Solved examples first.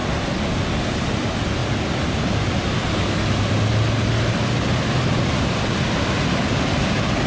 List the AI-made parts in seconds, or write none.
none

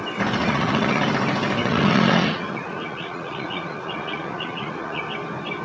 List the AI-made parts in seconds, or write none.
0.4-1.0 (vocoder, Vocos); 1.6-5.0

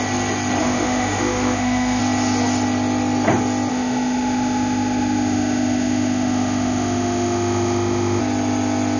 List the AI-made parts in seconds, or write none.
0.6-2.0 (autoencoder, DAC-VAE); 3.7-8.2